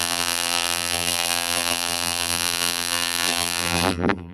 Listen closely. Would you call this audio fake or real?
fake